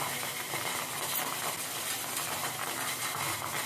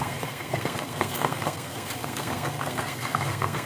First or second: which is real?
first